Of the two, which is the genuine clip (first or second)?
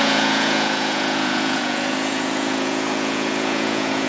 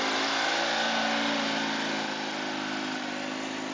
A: second